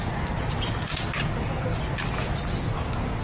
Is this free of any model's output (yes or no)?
yes